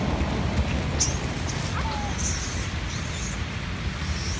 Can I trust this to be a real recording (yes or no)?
yes